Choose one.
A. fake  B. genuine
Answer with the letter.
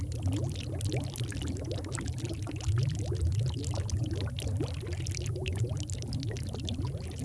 B